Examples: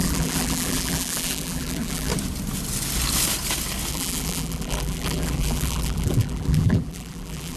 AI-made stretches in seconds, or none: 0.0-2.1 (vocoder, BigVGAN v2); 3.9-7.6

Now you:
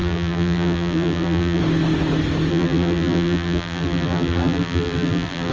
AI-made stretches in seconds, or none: 0.0-1.6 (vocoder, BigVGAN v2); 2.5-5.5

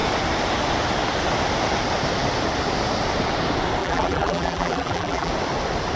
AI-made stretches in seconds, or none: 3.8-5.3 (vocoder, BigVGAN v2)

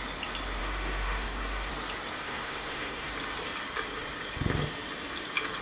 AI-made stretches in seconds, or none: 0.6-1.7 (codec, SNAC); 2.2-3.1

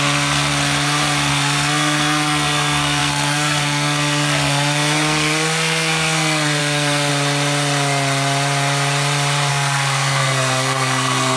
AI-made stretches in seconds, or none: 0.0-0.5 (codec, SNAC); 1.3-7.1; 9.5-11.4

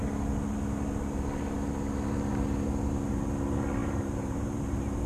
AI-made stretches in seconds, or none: 3.8-5.1 (vocoder, BigVGAN v2)

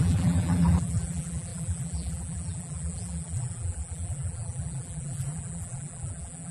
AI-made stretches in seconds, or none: 0.0-6.5 (vocoder, BigVGAN v2)

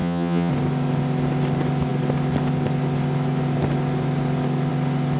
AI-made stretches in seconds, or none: 0.0-0.5 (vocoder, HiFi-GAN)